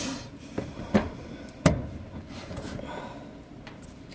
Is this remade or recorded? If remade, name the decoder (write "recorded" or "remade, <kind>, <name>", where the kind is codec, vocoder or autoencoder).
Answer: recorded